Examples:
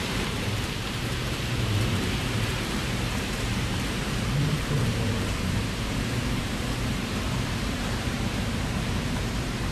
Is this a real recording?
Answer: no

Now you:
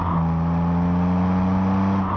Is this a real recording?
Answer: yes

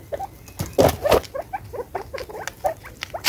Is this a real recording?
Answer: yes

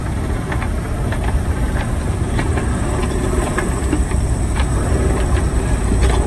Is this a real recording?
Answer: no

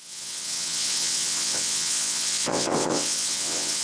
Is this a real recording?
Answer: no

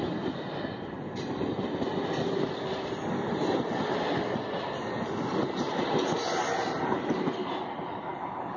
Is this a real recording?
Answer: yes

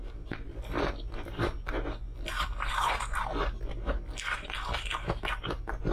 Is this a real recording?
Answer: yes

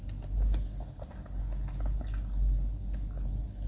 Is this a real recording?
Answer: yes